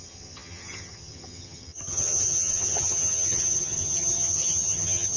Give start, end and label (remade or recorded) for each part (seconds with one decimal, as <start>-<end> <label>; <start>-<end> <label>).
0.0-5.2 remade